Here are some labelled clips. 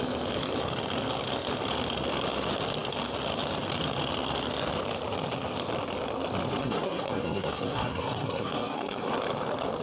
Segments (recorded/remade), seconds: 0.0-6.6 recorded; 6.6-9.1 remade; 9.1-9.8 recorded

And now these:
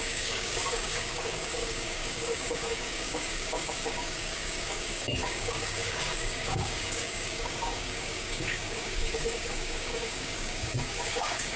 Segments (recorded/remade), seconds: 0.0-11.6 remade

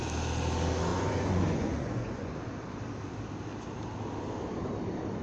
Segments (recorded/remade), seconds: 0.0-0.9 recorded; 0.9-2.3 remade; 2.3-5.2 recorded

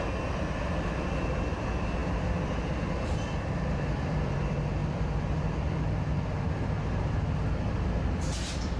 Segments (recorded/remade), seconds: 0.0-4.8 recorded; 4.8-5.5 remade; 5.5-8.8 recorded